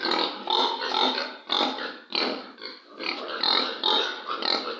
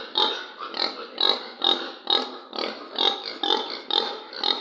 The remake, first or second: first